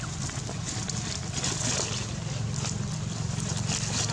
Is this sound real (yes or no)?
yes